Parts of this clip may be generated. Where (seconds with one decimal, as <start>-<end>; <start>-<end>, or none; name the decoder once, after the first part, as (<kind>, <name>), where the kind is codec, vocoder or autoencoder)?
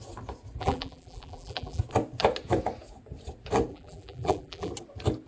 0.6-1.8 (vocoder, BigVGAN v2); 3.7-4.7